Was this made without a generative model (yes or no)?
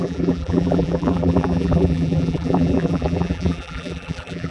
no